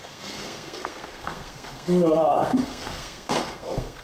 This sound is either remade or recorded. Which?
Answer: remade